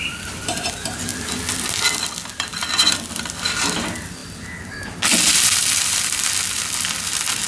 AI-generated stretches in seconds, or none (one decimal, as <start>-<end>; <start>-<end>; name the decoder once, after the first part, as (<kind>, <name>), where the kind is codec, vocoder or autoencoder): 0.0-1.1 (vocoder, BigVGAN v2); 2.0-4.2; 5.3-7.5